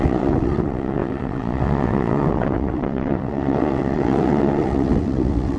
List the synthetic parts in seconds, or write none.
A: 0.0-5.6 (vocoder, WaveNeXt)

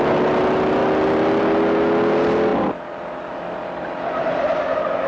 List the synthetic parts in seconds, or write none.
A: none

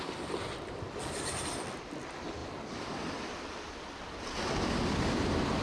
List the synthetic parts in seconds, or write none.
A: 1.4-2.0 (vocoder, BigVGAN v2)

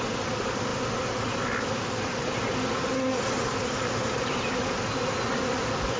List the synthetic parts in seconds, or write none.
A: none

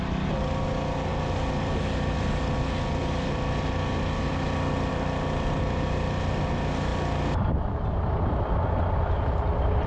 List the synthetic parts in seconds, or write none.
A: none